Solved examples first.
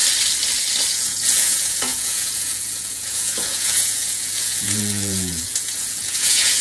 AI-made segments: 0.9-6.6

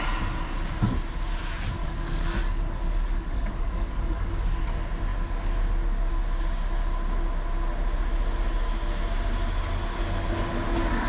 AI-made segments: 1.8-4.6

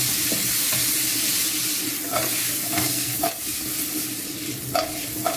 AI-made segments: 2.4-3.6

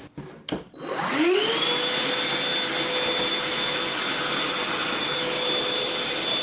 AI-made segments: 0.9-1.5

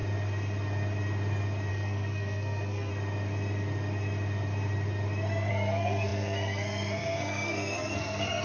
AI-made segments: 1.7-2.9; 5.5-8.4